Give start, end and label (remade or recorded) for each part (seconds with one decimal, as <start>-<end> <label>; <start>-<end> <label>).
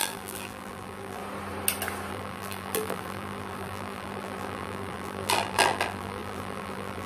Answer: 0.0-1.2 remade; 1.2-2.1 recorded; 2.1-7.1 remade